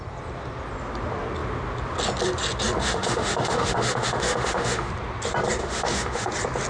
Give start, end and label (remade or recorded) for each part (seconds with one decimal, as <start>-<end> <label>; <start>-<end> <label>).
0.0-2.8 recorded; 2.8-4.9 remade; 4.9-5.6 recorded; 5.6-6.3 remade; 6.3-6.7 recorded